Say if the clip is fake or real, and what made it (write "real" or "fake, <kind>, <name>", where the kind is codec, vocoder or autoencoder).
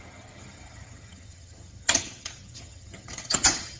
fake, vocoder, HiFi-GAN